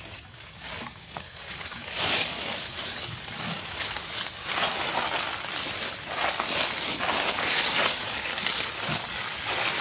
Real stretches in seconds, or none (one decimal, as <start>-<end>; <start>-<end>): 4.4-7.1; 8.3-8.9